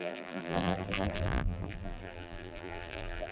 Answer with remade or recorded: remade